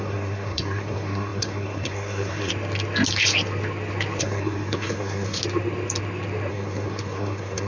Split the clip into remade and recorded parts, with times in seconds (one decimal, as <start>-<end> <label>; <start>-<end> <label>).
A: 0.0-2.5 remade; 2.5-4.2 recorded; 4.2-5.4 remade; 5.4-6.5 recorded; 6.5-7.7 remade